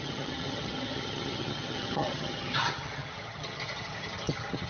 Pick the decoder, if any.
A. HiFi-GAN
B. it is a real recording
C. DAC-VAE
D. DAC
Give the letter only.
A